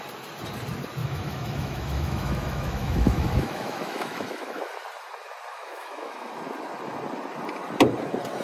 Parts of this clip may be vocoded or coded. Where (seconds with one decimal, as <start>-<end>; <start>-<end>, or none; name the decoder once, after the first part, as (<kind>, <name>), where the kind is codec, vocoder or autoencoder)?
1.0-4.6 (autoencoder, DAC-VAE); 5.5-6.3